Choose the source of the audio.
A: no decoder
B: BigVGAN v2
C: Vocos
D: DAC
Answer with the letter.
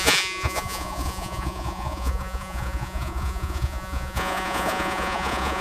C